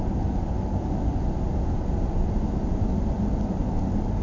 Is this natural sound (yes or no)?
yes